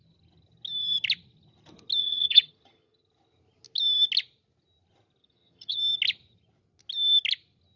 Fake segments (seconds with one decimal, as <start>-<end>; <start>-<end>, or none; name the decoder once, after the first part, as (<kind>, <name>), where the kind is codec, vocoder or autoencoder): 2.0-3.0 (vocoder, HiFi-GAN); 5.2-5.8